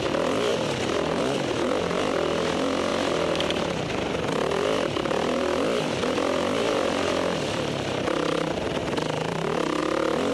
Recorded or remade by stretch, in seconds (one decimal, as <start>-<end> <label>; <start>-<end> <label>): 0.0-2.9 recorded; 2.9-8.0 remade; 8.0-10.3 recorded